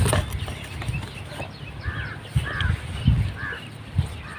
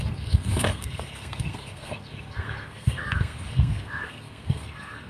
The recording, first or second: first